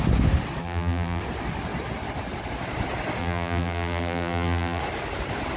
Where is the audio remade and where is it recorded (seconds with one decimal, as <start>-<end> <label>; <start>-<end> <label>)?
0.0-0.6 recorded; 0.6-1.2 remade; 1.2-3.2 recorded; 3.2-4.8 remade; 4.8-5.6 recorded